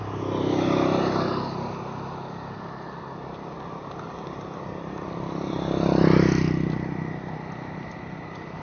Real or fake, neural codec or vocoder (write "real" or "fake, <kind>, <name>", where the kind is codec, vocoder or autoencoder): real